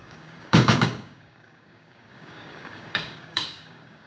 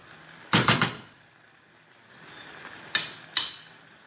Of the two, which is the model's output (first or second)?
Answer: first